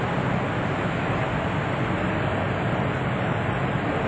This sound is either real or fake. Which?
real